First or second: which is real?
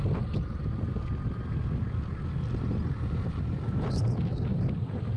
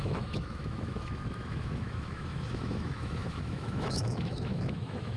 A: first